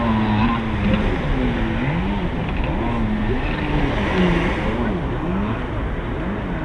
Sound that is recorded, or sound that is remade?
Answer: recorded